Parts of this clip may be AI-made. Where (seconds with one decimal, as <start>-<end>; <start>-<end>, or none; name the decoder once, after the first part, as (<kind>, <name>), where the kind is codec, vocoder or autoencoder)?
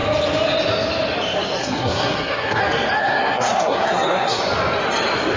1.6-2.6 (codec, SNAC); 3.0-4.4